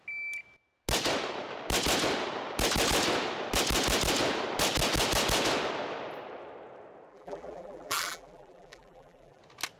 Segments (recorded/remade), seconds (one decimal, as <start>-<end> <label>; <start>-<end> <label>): 0.0-7.1 recorded; 7.1-9.4 remade; 9.4-9.8 recorded

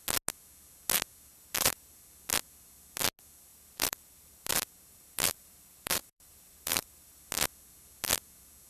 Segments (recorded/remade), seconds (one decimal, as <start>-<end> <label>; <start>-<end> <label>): 0.0-1.3 recorded; 1.3-1.9 remade; 1.9-3.5 recorded; 3.5-7.2 remade; 7.2-8.7 recorded

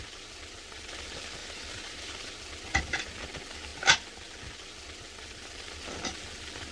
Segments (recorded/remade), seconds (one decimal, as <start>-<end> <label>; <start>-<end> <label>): 0.0-1.4 recorded; 1.4-2.3 remade; 2.3-6.7 recorded

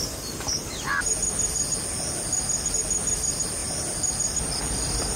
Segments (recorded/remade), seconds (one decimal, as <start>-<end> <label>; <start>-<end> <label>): 0.0-5.2 recorded

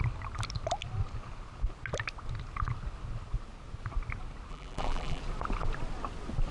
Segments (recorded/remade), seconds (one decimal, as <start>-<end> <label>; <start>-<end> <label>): 0.0-4.5 recorded; 4.5-5.2 remade; 5.2-6.5 recorded

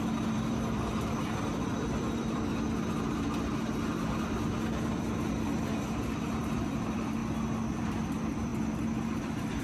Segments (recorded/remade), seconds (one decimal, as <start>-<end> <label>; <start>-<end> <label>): 0.0-2.5 remade; 2.5-5.3 recorded; 5.3-7.2 remade; 7.2-7.8 recorded; 7.8-9.6 remade